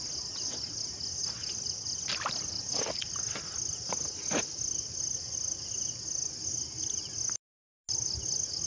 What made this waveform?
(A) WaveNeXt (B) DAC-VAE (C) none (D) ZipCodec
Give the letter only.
C